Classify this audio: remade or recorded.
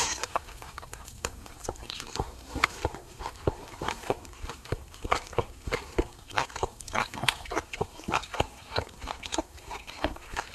remade